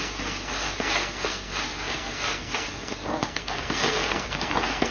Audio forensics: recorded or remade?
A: remade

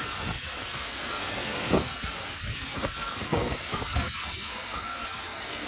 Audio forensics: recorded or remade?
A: remade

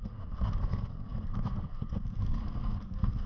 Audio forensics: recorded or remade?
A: remade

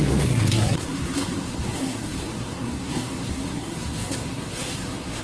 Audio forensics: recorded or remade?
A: remade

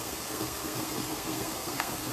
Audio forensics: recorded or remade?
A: remade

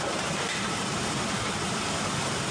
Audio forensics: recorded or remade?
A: recorded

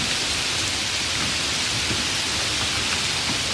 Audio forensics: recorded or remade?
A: recorded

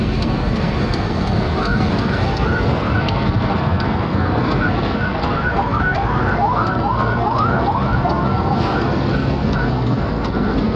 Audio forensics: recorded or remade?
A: remade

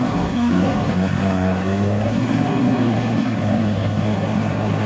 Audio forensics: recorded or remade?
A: remade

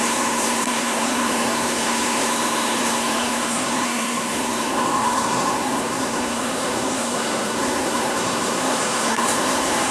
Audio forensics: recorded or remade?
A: remade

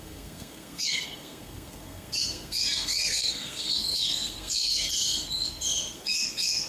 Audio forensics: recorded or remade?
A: remade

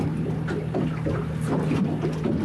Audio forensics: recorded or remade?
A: recorded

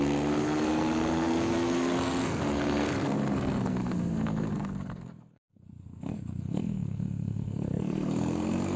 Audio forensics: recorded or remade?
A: remade